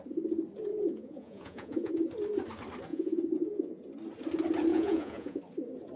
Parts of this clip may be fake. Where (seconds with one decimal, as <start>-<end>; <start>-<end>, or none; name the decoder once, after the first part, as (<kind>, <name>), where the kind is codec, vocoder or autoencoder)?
0.7-1.9 (vocoder, Vocos); 2.9-3.8; 4.7-5.4